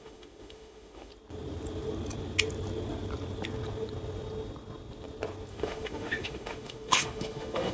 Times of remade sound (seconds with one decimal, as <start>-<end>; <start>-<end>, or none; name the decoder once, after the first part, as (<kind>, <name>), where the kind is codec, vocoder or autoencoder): 0.0-1.1 (autoencoder, DAC-VAE); 5.5-7.7